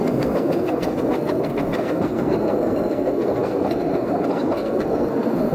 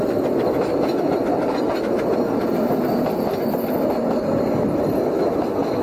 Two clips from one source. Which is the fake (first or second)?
first